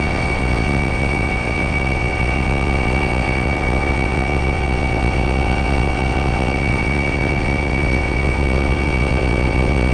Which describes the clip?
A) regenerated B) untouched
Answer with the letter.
A